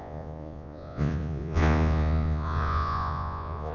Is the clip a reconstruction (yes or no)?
yes